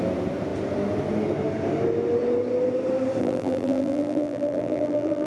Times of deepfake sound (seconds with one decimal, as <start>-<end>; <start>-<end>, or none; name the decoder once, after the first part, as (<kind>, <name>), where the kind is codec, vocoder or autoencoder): 3.2-5.3 (vocoder, BigVGAN v2)